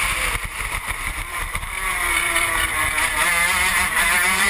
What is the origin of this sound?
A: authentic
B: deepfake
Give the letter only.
B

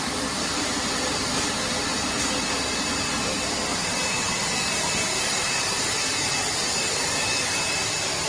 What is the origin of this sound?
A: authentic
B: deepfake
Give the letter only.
B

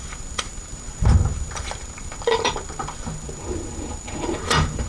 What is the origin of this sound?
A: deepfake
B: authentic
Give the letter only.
A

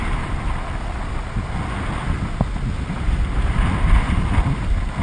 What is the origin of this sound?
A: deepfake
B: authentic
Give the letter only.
B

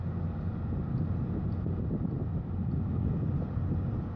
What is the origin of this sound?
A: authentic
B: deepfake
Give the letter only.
A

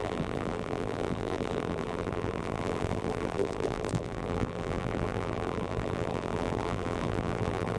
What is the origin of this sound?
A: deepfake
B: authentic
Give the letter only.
A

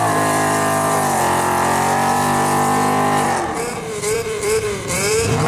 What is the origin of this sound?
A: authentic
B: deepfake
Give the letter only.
B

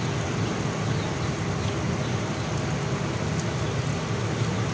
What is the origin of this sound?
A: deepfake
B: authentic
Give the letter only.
B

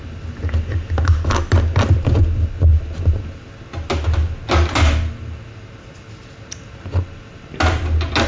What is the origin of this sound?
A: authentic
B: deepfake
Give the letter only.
A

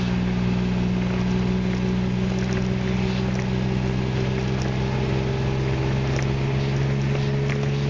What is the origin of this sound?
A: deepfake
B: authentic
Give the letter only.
B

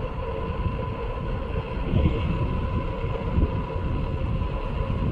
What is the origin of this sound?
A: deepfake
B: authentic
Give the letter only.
B